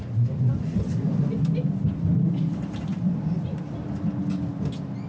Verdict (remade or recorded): recorded